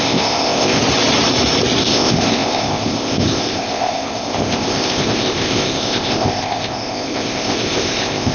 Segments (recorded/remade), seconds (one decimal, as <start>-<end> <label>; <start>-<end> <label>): 0.0-0.8 remade; 0.8-1.8 recorded; 1.8-8.3 remade